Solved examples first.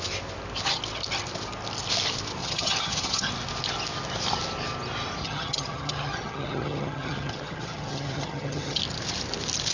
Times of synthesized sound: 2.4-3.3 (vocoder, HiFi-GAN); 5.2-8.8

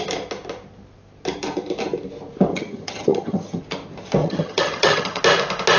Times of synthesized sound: 2.5-3.6 (vocoder, HiFi-GAN); 4.2-5.2

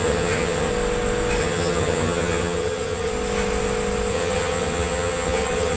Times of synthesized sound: 0.0-0.7 (vocoder, HiFi-GAN); 1.4-3.1; 4.1-5.8

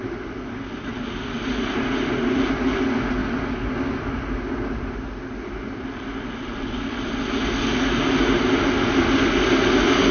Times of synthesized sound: none

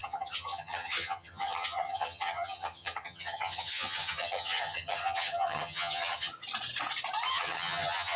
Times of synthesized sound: 0.0-6.3 (vocoder, HiFi-GAN); 7.3-8.2